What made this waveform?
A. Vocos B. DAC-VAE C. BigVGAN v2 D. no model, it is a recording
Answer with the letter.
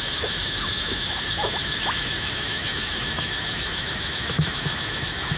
B